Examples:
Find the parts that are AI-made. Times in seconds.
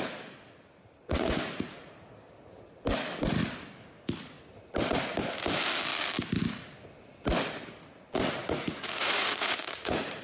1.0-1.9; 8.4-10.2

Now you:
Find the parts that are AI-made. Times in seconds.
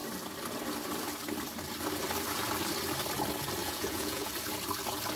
3.6-4.3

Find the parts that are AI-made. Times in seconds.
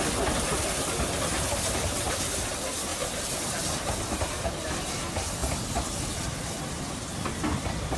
none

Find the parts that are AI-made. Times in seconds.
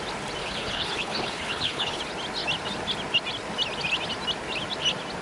0.4-2.0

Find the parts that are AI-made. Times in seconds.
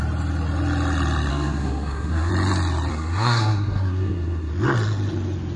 1.3-2.3; 2.9-4.5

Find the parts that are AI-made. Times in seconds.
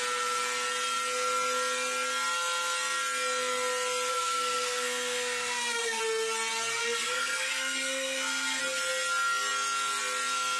4.1-6.0; 6.8-8.6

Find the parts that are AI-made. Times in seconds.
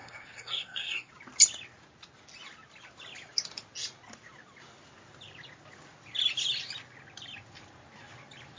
0.0-1.1